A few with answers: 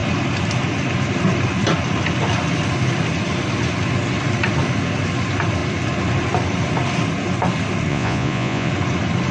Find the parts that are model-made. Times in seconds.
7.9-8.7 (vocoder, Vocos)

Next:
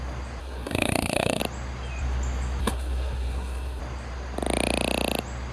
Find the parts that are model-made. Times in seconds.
0.4-1.4 (codec, SNAC); 2.6-3.8

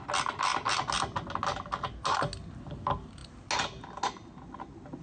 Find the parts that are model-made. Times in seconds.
none